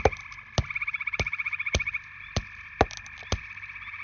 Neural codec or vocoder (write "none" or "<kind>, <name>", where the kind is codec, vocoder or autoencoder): none